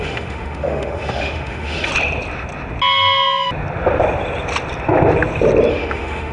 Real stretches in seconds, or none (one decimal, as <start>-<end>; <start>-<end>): 1.9-5.7